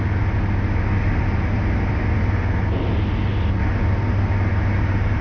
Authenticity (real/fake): real